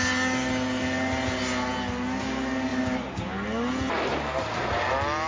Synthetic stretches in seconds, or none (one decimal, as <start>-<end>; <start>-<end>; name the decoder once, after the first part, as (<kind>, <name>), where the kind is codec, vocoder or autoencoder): none